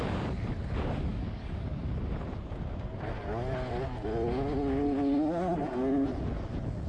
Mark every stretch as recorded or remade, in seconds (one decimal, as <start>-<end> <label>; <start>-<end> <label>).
0.0-1.1 recorded; 1.1-1.8 remade; 1.8-6.9 recorded